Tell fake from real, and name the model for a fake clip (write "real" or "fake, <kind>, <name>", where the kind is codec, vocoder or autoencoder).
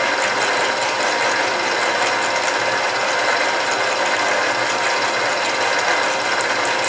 real